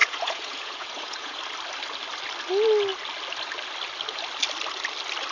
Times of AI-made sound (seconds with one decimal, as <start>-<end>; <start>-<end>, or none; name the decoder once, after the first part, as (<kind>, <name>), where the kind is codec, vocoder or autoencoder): 0.0-1.4 (vocoder, Vocos)